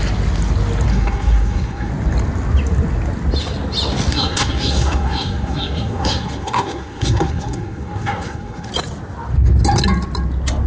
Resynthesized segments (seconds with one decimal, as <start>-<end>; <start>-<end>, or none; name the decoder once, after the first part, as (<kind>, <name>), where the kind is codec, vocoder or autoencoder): 0.9-1.9 (codec, SNAC); 4.1-8.7

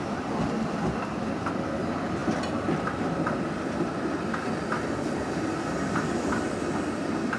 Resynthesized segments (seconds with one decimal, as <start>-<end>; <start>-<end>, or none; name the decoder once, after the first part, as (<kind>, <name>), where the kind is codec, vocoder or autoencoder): none

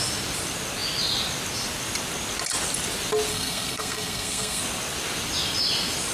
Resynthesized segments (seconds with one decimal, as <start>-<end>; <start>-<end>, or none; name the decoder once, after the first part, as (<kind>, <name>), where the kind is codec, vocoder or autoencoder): 3.3-4.6 (codec, SNAC)

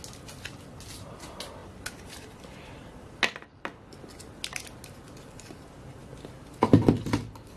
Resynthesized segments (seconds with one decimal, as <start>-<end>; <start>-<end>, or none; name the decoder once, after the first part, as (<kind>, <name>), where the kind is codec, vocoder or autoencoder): none

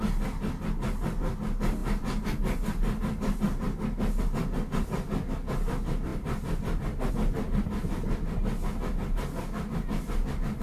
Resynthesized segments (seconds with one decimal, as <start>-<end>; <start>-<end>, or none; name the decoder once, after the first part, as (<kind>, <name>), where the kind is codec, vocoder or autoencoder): none